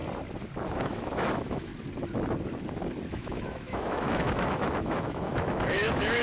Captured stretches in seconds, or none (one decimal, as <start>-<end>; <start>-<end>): 0.0-0.7; 1.7-3.1